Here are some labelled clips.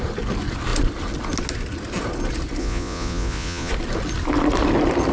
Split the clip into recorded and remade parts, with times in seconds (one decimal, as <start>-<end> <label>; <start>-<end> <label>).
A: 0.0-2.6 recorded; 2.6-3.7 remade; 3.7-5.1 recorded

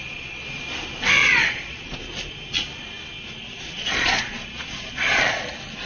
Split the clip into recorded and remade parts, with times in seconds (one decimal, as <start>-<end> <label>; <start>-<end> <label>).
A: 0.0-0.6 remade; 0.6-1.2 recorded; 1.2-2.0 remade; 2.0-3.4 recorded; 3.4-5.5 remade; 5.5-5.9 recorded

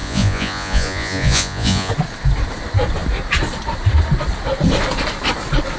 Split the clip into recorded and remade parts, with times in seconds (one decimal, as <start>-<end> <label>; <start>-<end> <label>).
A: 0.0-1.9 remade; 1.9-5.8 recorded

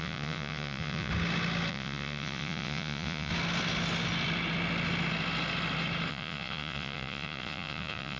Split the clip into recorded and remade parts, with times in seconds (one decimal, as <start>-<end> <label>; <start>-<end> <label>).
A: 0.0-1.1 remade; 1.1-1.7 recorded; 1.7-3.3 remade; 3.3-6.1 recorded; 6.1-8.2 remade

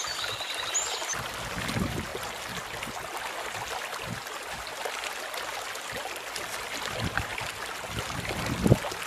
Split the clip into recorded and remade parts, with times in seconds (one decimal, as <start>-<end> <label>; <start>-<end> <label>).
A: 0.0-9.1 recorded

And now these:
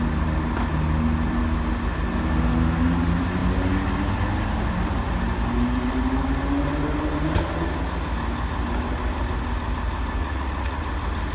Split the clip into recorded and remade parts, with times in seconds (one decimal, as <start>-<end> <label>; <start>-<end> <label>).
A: 0.0-10.2 recorded; 10.2-10.8 remade; 10.8-11.3 recorded

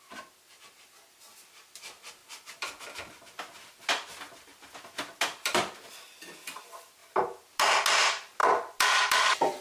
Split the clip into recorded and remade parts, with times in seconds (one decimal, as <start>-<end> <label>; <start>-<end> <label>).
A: 0.0-9.6 recorded

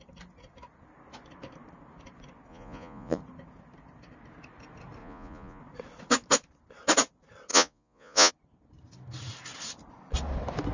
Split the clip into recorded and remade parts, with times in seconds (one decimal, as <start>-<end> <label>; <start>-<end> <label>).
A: 0.0-2.5 recorded; 2.5-3.2 remade; 3.2-5.0 recorded; 5.0-5.6 remade; 5.6-7.5 recorded; 7.5-8.3 remade; 8.3-10.7 recorded